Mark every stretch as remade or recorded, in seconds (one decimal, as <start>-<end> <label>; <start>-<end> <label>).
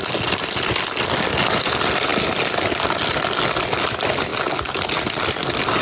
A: 0.0-5.8 recorded